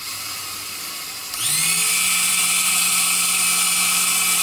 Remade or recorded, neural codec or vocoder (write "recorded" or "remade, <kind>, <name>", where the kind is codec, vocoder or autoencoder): recorded